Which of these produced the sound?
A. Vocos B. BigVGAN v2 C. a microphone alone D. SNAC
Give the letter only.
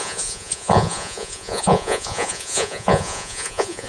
A